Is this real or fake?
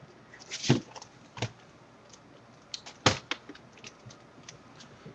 real